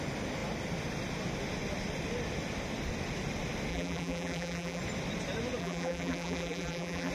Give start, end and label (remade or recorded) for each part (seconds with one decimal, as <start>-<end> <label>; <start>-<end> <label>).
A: 0.0-3.7 recorded; 3.7-4.8 remade; 4.8-5.6 recorded; 5.6-7.1 remade

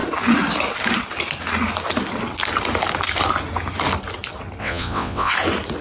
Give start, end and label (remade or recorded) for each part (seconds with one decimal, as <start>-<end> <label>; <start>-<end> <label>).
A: 0.0-4.6 recorded; 4.6-5.3 remade; 5.3-5.8 recorded